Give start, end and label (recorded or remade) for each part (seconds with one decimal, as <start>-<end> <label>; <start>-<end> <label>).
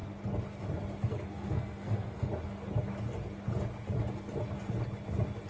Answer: 0.0-1.1 recorded; 1.1-2.3 remade; 2.3-5.5 recorded